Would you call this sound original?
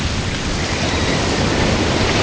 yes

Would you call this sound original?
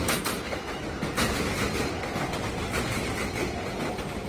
yes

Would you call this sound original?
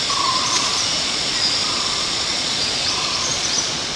no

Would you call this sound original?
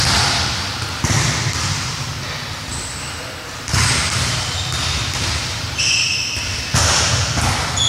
yes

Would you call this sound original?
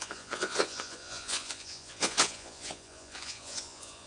no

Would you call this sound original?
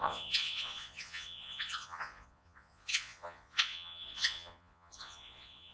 no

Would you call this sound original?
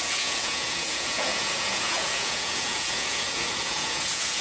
no